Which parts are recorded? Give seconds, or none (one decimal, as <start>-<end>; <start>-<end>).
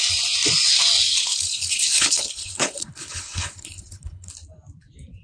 0.0-1.2; 4.3-5.2